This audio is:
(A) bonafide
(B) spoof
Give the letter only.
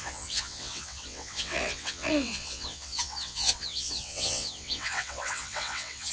B